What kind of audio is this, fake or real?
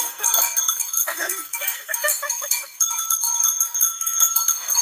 fake